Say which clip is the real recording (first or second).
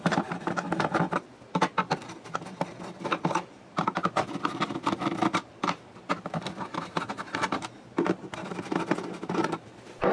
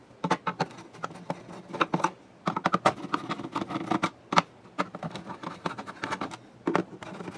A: second